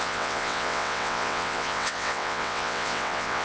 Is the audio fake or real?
fake